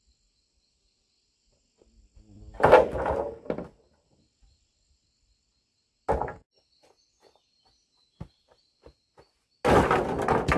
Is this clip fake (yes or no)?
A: no